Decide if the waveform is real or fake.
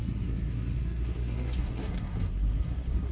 fake